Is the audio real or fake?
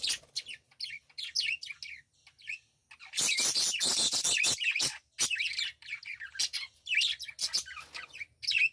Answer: real